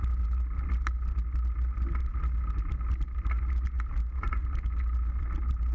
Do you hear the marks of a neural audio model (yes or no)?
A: no